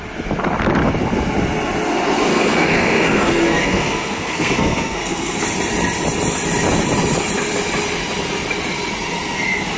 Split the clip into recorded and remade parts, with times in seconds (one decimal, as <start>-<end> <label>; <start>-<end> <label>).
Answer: 0.0-2.3 recorded; 2.3-5.4 remade; 5.4-9.8 recorded